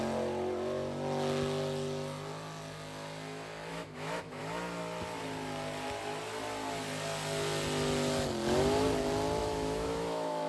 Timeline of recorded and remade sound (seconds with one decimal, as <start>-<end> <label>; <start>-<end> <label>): 0.0-3.7 recorded; 3.7-4.4 remade; 4.4-9.4 recorded; 9.4-10.5 remade